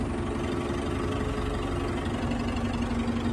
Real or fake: real